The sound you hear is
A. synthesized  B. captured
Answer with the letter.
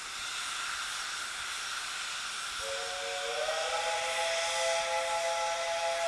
B